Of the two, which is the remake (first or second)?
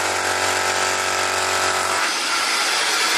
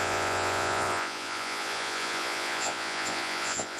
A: second